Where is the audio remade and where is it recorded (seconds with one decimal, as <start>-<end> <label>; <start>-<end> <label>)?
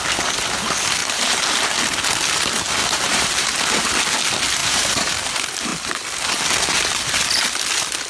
0.0-1.0 recorded; 1.0-1.6 remade; 1.6-2.8 recorded; 2.8-3.6 remade; 3.6-4.6 recorded; 4.6-5.1 remade; 5.1-8.1 recorded